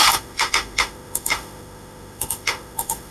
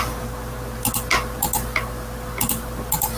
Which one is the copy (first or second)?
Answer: first